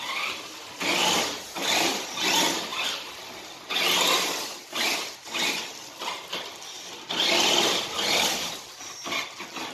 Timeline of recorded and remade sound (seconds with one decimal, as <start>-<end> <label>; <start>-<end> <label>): 0.0-9.7 recorded